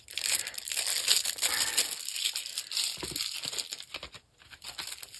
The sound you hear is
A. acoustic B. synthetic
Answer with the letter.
A